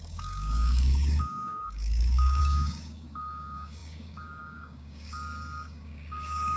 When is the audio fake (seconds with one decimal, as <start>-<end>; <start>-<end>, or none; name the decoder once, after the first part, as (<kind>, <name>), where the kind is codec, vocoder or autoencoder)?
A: 0.0-6.6 (codec, DAC)